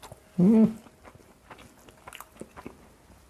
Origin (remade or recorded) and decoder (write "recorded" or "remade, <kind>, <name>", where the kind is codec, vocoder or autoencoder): recorded